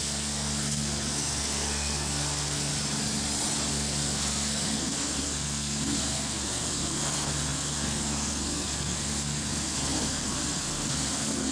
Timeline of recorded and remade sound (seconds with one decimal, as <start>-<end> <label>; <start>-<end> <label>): 0.0-2.7 remade; 2.7-3.7 recorded; 3.7-11.5 remade